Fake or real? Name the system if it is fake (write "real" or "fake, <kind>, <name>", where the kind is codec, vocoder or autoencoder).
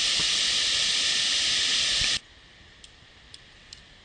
real